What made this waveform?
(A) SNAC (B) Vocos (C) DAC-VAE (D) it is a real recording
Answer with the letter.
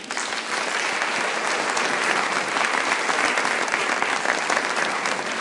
D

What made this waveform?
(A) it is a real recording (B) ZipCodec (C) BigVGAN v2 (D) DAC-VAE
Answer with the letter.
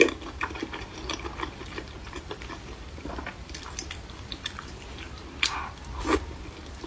A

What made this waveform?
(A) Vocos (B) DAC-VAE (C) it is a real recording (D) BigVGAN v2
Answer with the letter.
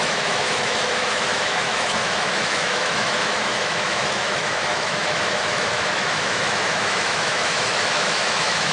B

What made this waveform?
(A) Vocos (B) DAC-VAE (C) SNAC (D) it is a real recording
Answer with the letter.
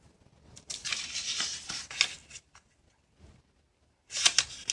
D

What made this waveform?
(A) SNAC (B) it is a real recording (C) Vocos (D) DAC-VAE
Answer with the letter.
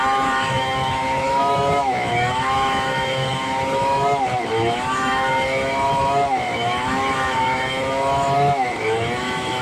D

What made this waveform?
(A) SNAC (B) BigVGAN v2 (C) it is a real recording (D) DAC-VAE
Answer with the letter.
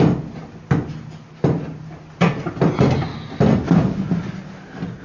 C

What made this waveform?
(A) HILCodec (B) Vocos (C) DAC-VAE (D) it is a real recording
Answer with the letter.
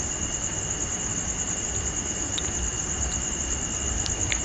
D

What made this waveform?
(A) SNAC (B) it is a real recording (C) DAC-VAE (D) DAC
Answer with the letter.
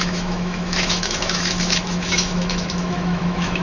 C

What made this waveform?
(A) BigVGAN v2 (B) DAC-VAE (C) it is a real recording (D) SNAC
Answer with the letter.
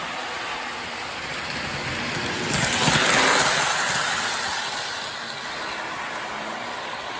C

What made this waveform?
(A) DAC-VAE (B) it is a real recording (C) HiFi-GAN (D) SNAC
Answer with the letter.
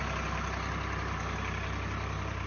B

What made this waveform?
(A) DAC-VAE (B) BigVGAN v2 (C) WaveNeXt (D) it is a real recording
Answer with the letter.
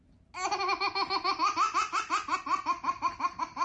D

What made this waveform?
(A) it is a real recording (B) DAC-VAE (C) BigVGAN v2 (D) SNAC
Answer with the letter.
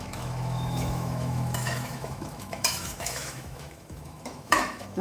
B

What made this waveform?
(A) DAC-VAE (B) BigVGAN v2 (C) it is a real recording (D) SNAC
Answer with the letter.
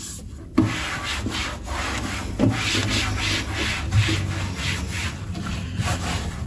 C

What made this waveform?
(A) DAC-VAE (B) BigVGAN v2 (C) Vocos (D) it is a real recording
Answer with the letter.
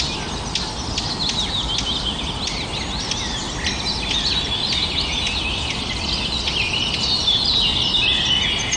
D